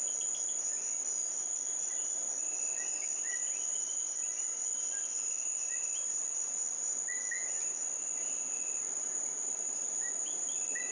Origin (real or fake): real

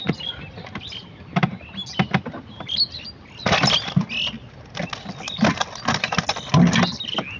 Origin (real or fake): real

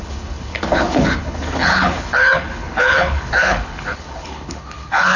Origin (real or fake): fake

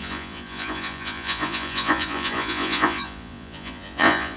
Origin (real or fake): fake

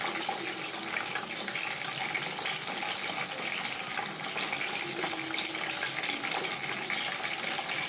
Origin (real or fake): real